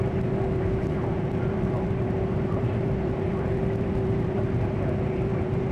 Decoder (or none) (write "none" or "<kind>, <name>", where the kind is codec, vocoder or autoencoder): vocoder, BigVGAN v2